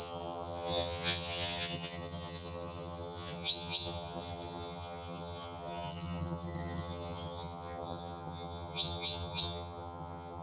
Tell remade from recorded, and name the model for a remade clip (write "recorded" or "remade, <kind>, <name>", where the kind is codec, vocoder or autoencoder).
remade, vocoder, HiFi-GAN